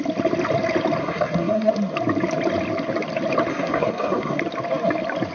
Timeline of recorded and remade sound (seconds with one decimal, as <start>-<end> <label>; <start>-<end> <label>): 0.0-1.0 recorded; 1.0-1.7 remade; 1.7-3.5 recorded; 3.5-4.4 remade; 4.4-5.3 recorded